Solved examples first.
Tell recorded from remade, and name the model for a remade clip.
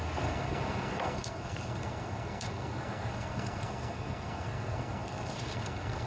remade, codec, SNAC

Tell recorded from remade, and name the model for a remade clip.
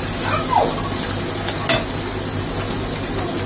recorded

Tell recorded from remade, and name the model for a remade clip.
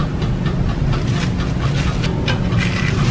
recorded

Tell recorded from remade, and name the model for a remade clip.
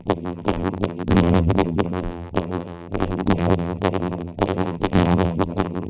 remade, vocoder, BigVGAN v2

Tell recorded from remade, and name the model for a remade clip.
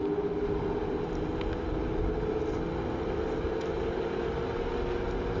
recorded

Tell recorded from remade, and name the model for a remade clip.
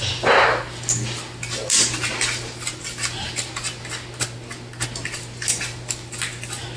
recorded